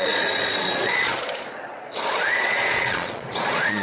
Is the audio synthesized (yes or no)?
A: yes